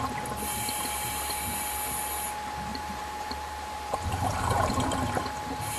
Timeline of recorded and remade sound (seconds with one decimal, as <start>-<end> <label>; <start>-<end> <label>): 0.0-2.7 recorded; 2.7-4.7 remade; 4.7-5.8 recorded